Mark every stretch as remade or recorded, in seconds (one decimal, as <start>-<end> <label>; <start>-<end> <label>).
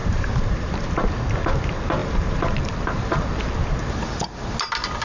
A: 0.0-0.7 remade; 0.7-2.0 recorded; 2.0-3.4 remade; 3.4-5.0 recorded